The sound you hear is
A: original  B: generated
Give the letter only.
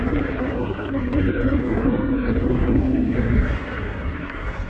B